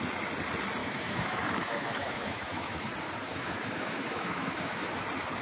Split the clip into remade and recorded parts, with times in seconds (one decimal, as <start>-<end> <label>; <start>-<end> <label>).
0.0-0.8 recorded; 0.8-2.9 remade; 2.9-3.3 recorded; 3.3-4.9 remade; 4.9-5.4 recorded